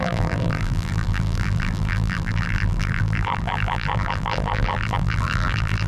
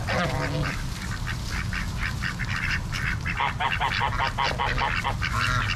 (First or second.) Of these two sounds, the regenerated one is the first